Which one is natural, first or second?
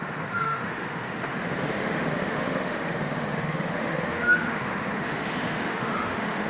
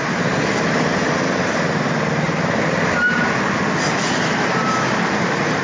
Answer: second